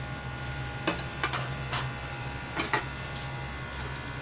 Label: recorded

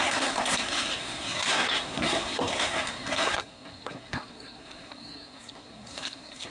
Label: remade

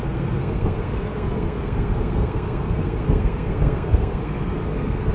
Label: remade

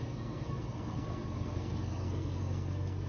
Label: remade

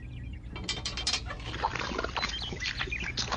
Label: recorded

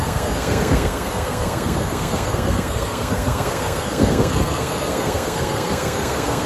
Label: remade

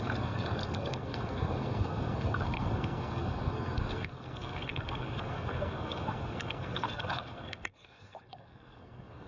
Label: remade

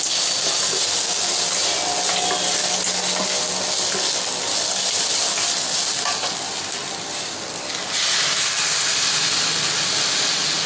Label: recorded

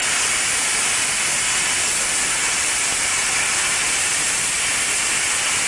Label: recorded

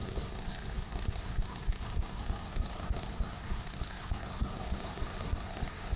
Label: remade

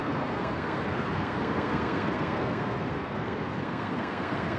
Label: remade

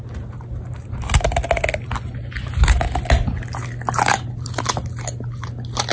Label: recorded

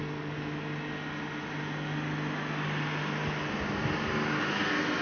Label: recorded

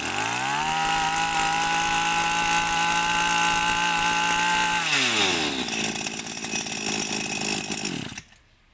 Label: recorded